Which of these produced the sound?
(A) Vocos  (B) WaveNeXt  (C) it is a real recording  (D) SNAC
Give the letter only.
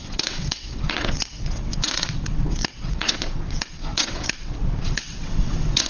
B